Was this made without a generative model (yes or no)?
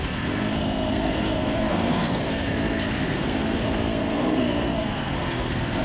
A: no